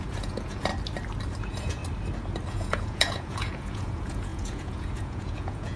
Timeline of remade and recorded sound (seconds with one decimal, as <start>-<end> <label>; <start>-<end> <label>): 0.0-0.7 remade; 0.7-1.4 recorded; 1.4-1.8 remade; 1.8-2.5 recorded; 2.5-5.8 remade